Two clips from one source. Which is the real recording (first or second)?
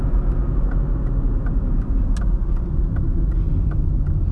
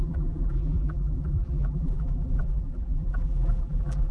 first